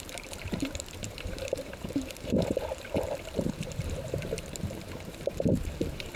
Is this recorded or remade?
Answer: remade